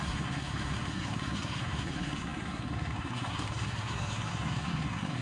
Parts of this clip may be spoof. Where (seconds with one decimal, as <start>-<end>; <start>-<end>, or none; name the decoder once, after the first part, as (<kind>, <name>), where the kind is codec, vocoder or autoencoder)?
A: 0.0-5.2 (codec, SNAC)